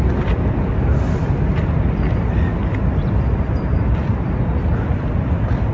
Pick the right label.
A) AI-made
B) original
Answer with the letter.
A